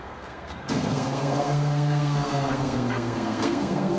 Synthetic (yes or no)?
yes